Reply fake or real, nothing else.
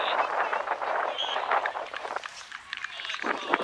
fake